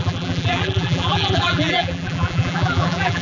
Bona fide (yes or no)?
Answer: no